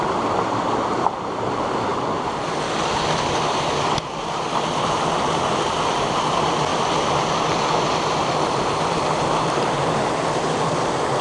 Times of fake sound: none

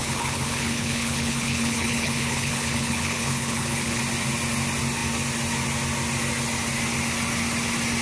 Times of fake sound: 0.0-4.0 (codec, HILCodec)

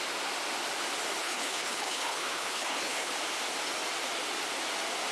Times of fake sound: 1.2-3.1 (codec, HILCodec)

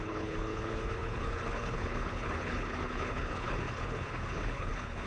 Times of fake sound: 0.0-5.1 (codec, HILCodec)